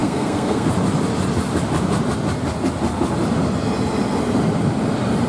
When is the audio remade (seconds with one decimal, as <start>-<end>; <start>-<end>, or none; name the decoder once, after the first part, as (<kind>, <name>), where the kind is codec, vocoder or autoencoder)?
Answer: 0.0-0.7 (codec, SNAC)